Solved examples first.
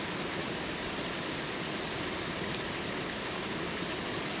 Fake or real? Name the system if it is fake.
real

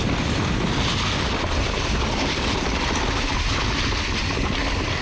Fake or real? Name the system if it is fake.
real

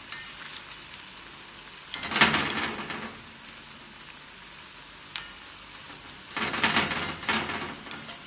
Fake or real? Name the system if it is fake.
real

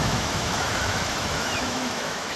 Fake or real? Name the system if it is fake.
fake, autoencoder, DAC-VAE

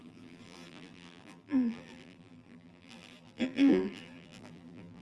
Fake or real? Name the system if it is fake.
fake, vocoder, BigVGAN v2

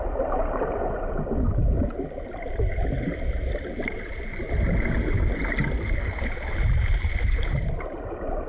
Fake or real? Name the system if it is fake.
real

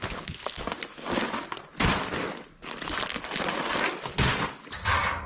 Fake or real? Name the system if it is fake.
real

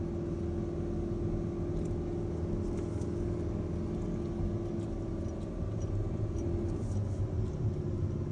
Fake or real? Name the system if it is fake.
real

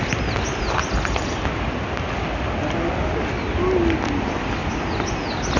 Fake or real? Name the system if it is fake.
real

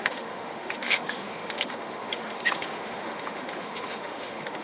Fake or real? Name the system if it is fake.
fake, autoencoder, DAC-VAE